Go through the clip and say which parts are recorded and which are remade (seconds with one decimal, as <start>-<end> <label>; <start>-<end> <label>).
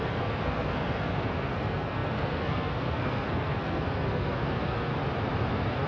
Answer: 0.0-4.9 remade; 4.9-5.5 recorded; 5.5-5.9 remade